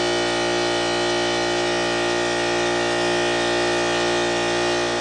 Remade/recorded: recorded